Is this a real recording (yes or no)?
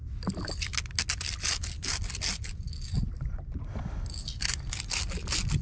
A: yes